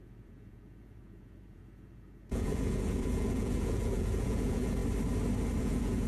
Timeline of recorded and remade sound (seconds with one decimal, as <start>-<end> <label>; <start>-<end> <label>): 0.0-4.8 remade; 4.8-5.6 recorded; 5.6-6.1 remade